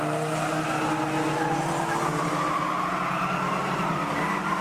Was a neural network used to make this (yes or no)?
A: no